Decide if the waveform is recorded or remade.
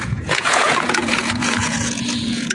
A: remade